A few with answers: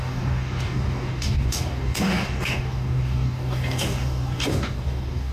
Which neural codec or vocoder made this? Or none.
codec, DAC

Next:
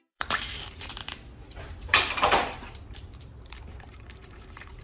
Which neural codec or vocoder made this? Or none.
vocoder, BigVGAN v2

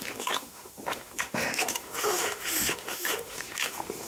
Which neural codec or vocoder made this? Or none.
autoencoder, DAC-VAE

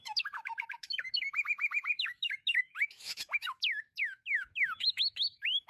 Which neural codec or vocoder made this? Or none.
autoencoder, DAC-VAE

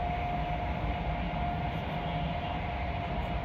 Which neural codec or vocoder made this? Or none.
none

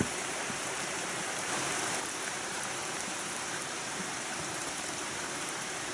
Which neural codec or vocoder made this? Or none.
vocoder, BigVGAN v2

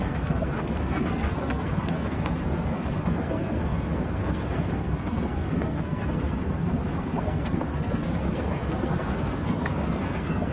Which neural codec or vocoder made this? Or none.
codec, SNAC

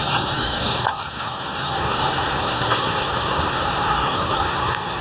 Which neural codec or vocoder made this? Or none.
codec, SNAC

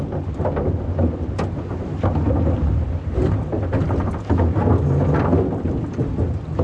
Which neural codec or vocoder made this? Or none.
none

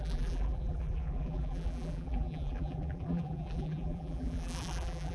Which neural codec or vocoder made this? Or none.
vocoder, BigVGAN v2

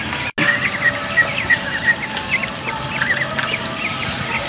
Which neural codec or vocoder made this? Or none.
none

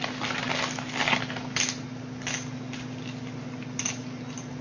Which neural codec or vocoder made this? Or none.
none